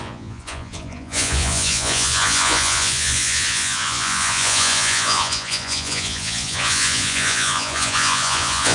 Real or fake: fake